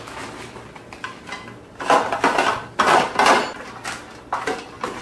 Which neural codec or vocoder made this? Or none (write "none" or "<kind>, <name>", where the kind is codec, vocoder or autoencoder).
none